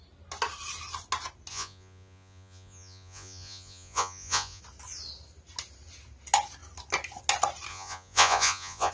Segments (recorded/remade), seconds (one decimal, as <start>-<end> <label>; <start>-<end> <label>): 0.0-1.5 recorded; 1.5-4.6 remade; 4.6-7.7 recorded; 7.7-8.9 remade